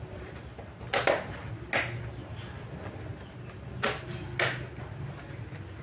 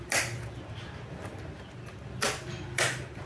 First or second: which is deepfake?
second